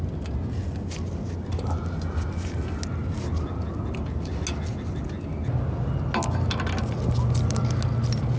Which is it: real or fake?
real